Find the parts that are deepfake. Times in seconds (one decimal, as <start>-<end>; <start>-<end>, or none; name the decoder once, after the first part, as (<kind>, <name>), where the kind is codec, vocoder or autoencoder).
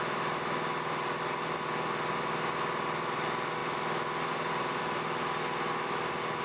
none